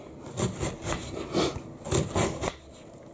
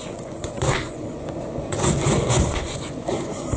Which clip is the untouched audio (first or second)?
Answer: first